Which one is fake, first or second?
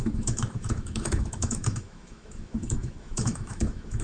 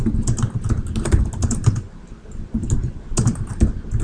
first